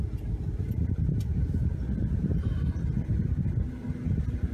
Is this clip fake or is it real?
real